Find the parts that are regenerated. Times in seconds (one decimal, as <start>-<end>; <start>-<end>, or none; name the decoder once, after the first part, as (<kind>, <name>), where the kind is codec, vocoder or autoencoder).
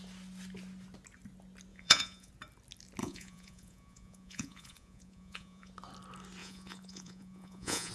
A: 1.7-2.3 (vocoder, Vocos); 3.0-5.7; 6.4-7.9